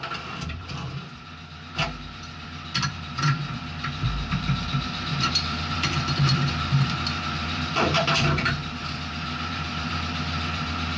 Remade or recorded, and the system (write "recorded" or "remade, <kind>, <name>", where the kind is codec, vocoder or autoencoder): remade, vocoder, BigVGAN v2